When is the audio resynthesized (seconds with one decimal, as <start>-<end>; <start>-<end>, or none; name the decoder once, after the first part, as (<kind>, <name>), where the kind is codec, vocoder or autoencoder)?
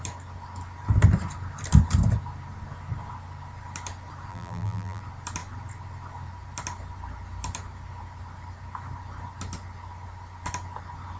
4.3-5.0 (vocoder, BigVGAN v2)